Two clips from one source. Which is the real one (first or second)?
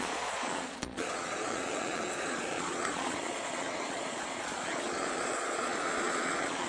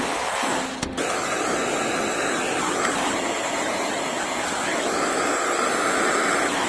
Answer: second